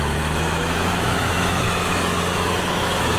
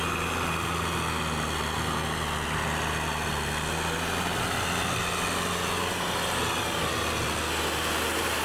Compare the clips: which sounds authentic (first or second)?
second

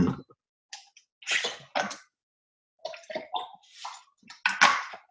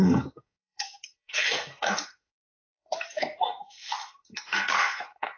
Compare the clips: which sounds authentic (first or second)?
first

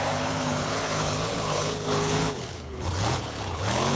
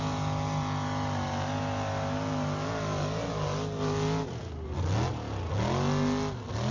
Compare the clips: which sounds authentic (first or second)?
second